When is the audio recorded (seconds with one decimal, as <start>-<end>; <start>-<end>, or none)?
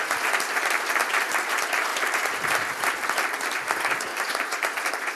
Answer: 0.0-1.9; 2.9-4.1